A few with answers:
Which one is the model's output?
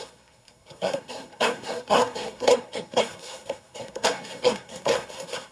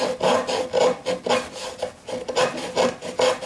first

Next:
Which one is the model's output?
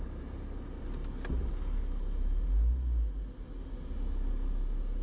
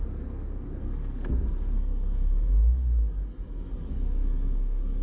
second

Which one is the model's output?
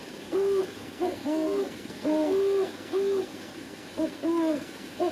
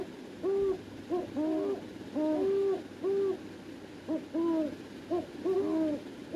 first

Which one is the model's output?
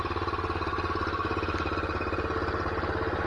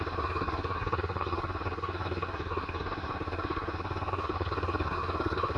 second